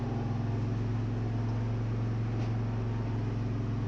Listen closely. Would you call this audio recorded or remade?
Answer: recorded